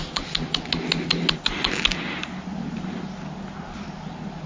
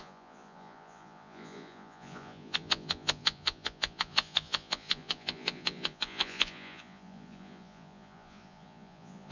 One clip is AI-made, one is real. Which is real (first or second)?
first